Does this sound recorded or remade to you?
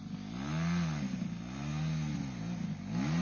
recorded